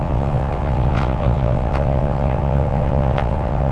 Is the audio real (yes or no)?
no